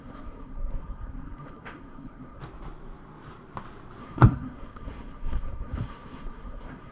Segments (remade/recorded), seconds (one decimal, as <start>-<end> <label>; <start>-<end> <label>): 0.0-2.4 remade; 2.4-4.0 recorded; 4.0-6.9 remade